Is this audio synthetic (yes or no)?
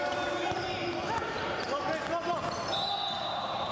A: no